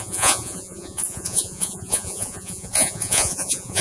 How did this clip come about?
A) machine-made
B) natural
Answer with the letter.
A